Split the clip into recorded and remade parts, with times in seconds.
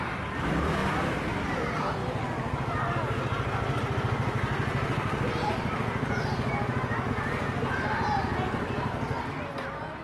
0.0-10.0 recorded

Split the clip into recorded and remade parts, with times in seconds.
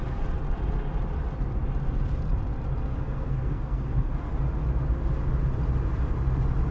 0.0-2.9 recorded; 2.9-4.3 remade; 4.3-6.7 recorded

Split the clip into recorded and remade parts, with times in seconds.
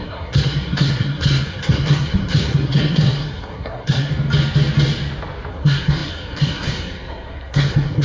0.0-4.1 remade; 4.1-5.5 recorded; 5.5-8.0 remade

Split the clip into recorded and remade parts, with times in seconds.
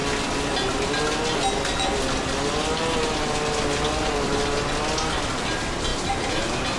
0.0-6.8 recorded